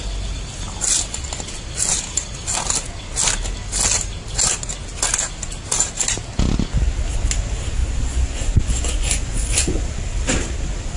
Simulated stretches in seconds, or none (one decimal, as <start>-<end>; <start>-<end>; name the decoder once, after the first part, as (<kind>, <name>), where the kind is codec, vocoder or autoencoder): 7.8-9.8 (vocoder, Vocos)